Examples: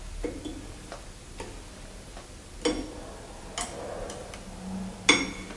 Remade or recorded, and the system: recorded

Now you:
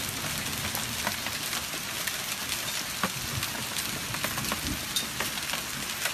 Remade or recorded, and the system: recorded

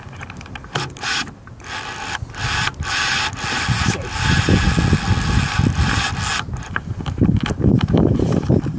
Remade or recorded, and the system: recorded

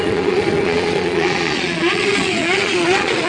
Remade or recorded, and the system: remade, vocoder, Vocos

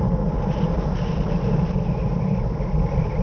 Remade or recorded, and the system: recorded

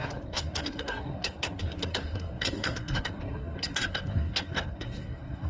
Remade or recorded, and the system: remade, codec, SNAC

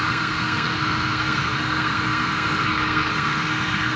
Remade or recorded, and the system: remade, codec, SNAC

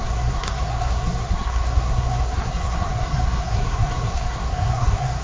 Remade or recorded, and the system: remade, codec, SNAC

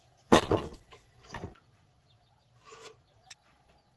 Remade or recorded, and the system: remade, vocoder, Vocos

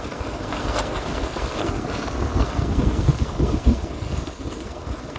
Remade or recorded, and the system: remade, codec, SNAC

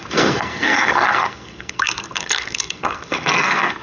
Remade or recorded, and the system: remade, codec, SNAC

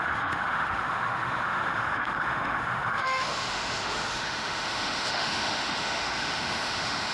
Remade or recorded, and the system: remade, autoencoder, DAC-VAE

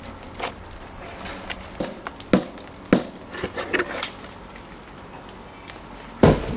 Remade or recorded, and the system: recorded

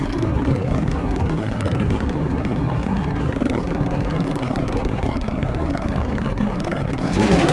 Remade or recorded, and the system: remade, codec, SNAC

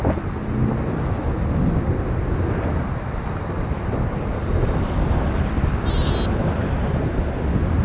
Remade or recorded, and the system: recorded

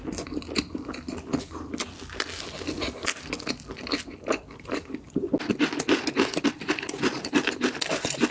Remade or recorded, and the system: recorded